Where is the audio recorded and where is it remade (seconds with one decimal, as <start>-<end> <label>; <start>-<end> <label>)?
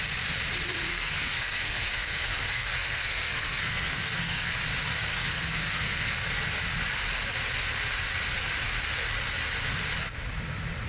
0.0-0.9 recorded; 0.9-4.5 remade; 4.5-5.1 recorded; 5.1-6.6 remade; 6.6-10.9 recorded